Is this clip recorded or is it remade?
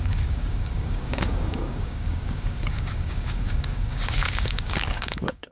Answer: remade